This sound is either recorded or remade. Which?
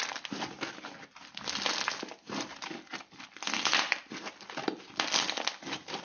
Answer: recorded